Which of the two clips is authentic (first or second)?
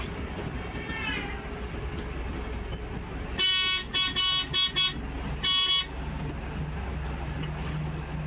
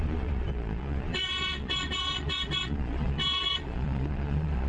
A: first